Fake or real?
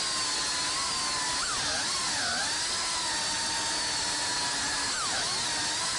real